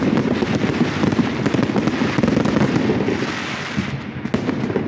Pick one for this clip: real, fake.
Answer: real